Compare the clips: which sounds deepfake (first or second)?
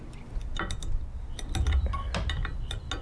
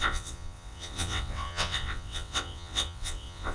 second